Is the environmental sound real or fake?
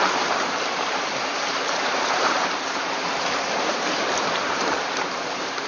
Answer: fake